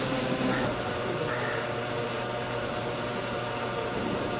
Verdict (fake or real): fake